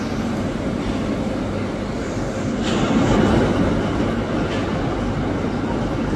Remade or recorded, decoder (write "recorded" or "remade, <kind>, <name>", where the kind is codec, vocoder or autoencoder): recorded